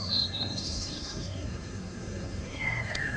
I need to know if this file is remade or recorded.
remade